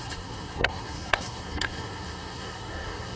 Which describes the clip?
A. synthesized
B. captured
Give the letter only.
A